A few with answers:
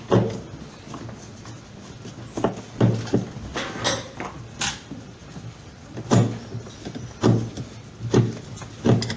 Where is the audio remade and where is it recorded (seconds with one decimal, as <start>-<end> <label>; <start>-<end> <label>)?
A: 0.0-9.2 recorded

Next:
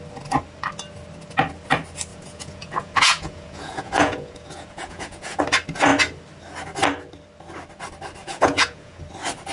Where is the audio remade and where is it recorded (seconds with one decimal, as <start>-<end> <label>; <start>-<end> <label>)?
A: 0.0-2.1 recorded; 2.1-5.4 remade; 5.4-8.2 recorded; 8.2-9.0 remade; 9.0-9.5 recorded

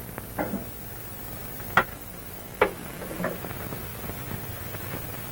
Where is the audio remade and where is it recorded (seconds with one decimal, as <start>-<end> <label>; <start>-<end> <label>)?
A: 0.0-1.9 recorded; 1.9-3.3 remade; 3.3-5.3 recorded

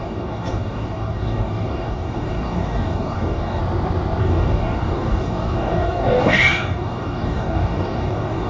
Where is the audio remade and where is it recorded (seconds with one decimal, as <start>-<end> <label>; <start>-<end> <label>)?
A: 0.0-3.6 remade; 3.6-4.2 recorded; 4.2-8.5 remade

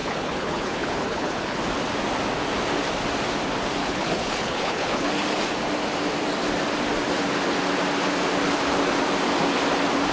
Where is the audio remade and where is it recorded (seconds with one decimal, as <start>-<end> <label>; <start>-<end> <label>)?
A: 0.0-1.6 remade; 1.6-3.8 recorded; 3.8-5.1 remade; 5.1-10.1 recorded

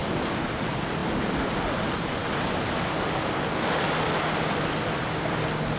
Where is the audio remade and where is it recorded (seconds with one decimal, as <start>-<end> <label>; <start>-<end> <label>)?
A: 0.0-5.8 recorded